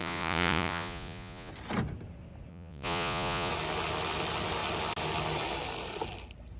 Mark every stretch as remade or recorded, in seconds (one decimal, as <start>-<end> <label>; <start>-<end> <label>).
0.0-1.5 remade; 1.5-2.5 recorded; 2.5-3.5 remade; 3.5-6.6 recorded